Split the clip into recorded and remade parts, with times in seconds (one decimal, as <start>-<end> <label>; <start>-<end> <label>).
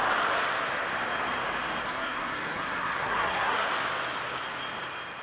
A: 0.0-1.8 recorded; 1.8-3.7 remade; 3.7-5.2 recorded